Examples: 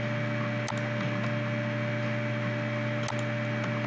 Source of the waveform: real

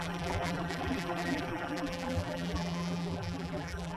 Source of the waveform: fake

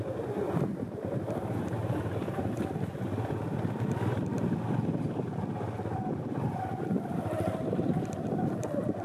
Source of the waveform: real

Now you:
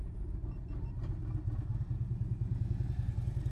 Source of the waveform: fake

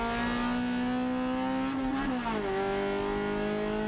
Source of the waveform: real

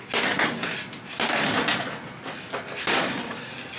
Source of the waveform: real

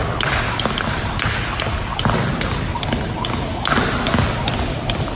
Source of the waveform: real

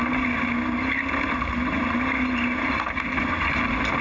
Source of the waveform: real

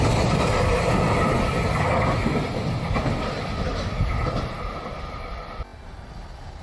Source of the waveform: real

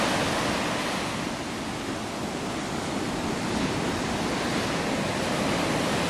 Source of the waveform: real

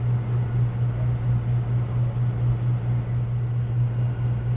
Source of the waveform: real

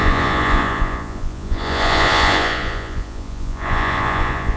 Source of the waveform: fake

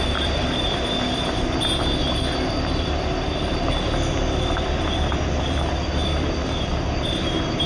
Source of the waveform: fake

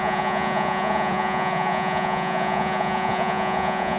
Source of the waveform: fake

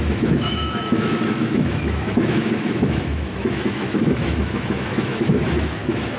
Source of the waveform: fake